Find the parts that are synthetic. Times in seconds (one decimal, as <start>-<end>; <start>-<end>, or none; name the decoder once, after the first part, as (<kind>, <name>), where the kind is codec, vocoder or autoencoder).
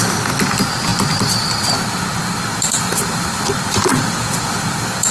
3.9-5.1 (vocoder, Vocos)